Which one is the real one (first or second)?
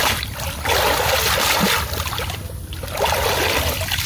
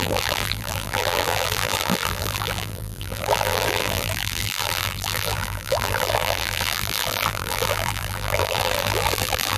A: first